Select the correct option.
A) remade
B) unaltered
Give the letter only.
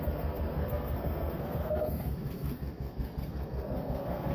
A